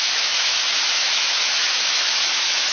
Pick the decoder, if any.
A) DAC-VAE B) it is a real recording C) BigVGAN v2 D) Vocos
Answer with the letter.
A